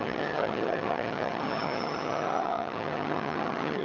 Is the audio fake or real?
fake